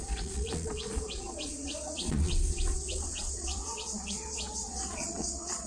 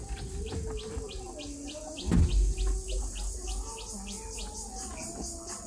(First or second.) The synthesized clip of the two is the first